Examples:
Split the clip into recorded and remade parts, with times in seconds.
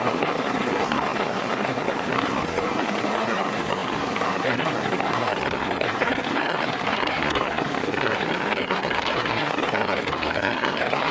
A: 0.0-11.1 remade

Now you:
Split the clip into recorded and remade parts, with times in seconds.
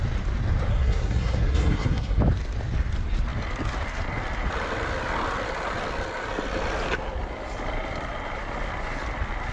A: 0.0-0.7 recorded; 0.7-2.2 remade; 2.2-9.5 recorded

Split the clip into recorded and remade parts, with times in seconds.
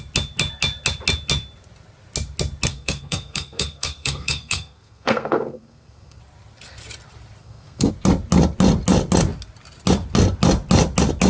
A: 0.0-2.7 recorded; 2.7-6.2 remade; 6.2-7.4 recorded; 7.4-7.9 remade; 7.9-11.3 recorded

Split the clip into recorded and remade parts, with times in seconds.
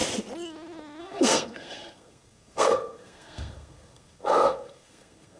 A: 0.0-1.0 recorded; 1.0-5.4 remade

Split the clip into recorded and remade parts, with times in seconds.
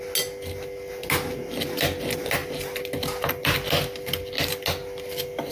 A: 0.0-5.5 recorded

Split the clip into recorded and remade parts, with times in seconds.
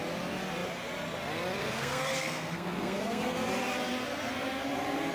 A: 0.0-1.6 recorded; 1.6-3.5 remade; 3.5-5.1 recorded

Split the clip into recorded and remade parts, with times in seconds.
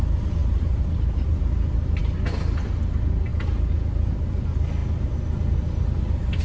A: 0.0-6.4 recorded